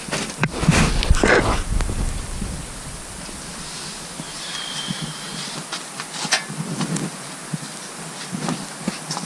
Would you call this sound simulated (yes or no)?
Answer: no